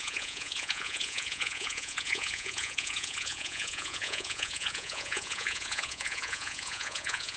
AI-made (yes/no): yes